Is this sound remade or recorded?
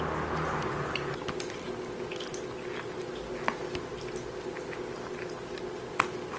recorded